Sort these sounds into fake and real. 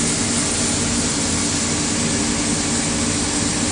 real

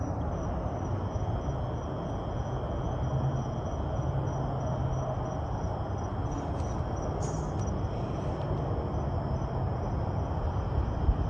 real